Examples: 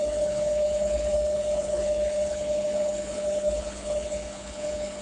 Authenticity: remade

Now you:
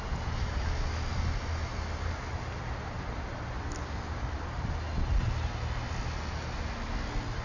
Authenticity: recorded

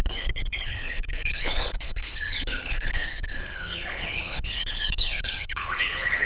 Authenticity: remade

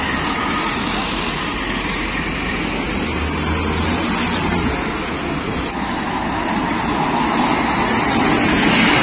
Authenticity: recorded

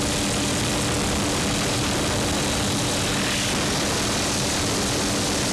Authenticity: recorded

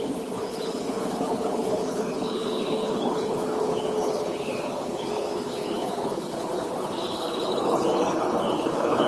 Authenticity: remade